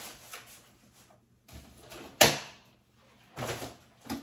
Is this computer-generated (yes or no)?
no